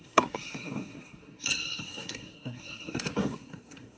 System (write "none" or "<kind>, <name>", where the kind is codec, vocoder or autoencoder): codec, SNAC